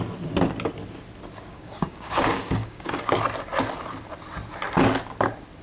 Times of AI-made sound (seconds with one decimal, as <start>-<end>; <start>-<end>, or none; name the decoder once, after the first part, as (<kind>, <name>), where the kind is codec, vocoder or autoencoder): 1.5-3.0 (codec, DAC)